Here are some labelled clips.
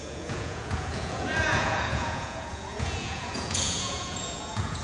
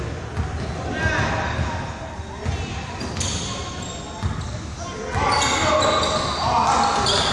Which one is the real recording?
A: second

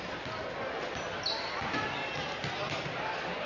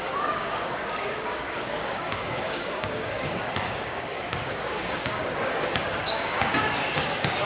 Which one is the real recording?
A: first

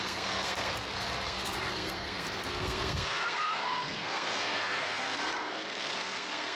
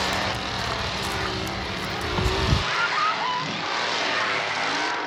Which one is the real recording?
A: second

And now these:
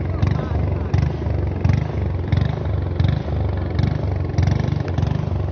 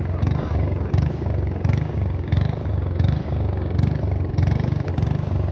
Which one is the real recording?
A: first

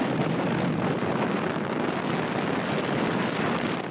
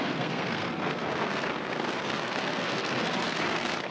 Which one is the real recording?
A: first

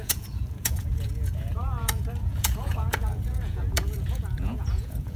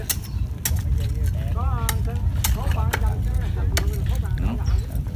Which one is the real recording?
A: second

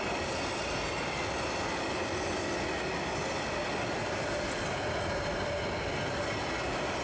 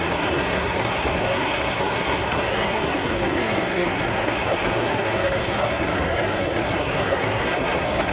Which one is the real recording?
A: first